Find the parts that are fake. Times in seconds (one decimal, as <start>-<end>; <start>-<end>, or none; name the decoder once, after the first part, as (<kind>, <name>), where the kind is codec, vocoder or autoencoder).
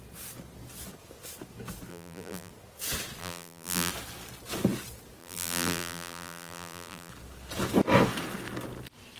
1.9-2.5 (vocoder, BigVGAN v2); 3.2-3.9; 5.2-7.1